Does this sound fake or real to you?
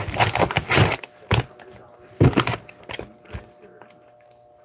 real